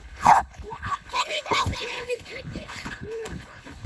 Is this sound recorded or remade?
remade